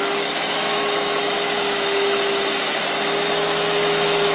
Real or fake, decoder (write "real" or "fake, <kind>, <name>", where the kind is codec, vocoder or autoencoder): fake, autoencoder, DAC-VAE